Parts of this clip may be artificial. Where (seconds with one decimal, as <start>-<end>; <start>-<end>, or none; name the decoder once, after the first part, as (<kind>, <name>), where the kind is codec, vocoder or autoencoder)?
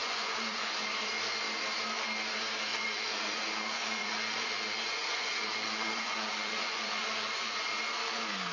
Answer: 0.0-0.7 (vocoder, Vocos); 2.7-7.8